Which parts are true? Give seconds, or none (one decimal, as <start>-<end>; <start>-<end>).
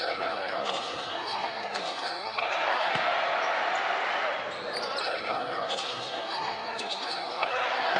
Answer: 2.9-5.0